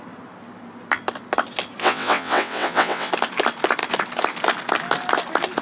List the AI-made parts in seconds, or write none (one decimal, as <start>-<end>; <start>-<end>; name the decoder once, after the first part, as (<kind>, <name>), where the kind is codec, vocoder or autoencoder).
1.8-3.1 (vocoder, WaveNeXt)